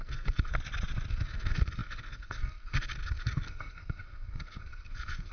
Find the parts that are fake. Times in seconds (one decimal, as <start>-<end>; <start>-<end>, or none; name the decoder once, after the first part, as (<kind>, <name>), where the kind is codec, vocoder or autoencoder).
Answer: 0.0-0.5 (codec, SNAC); 1.1-5.3